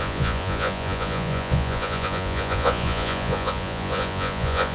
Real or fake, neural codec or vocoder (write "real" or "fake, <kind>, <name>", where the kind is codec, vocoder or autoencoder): fake, vocoder, Vocos